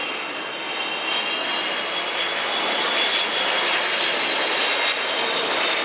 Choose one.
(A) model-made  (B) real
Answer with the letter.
B